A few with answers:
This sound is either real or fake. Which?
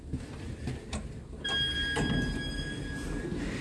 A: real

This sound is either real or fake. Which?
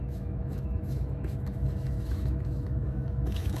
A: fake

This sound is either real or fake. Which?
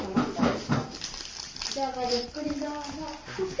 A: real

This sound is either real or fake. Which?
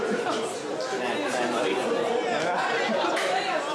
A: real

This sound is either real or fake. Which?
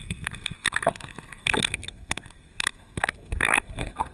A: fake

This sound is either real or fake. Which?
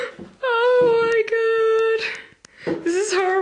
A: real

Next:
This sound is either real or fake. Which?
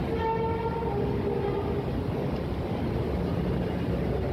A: real